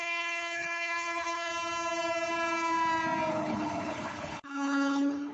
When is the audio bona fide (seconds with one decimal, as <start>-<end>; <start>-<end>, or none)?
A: 1.5-3.3